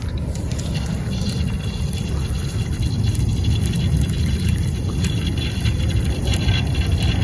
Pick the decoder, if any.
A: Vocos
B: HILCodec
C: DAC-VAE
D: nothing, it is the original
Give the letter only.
D